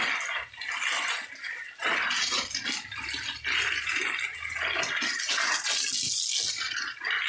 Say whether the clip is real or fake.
real